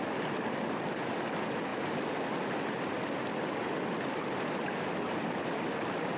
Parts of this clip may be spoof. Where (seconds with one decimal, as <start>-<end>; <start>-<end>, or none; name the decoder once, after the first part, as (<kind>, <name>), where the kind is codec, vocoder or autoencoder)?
none